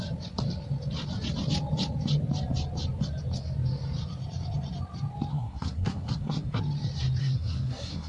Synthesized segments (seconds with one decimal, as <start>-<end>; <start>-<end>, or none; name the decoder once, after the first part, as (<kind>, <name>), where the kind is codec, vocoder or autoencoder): 5.3-6.6 (codec, SNAC); 7.2-8.1